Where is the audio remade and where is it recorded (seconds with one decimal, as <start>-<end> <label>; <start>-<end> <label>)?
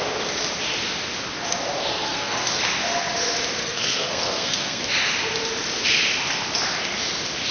0.0-1.9 recorded; 1.9-2.6 remade; 2.6-3.6 recorded; 3.6-4.8 remade; 4.8-7.5 recorded